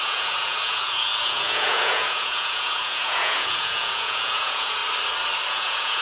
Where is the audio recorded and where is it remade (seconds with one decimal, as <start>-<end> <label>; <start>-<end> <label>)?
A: 0.0-4.8 remade; 4.8-5.5 recorded; 5.5-6.0 remade